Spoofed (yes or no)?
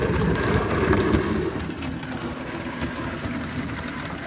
yes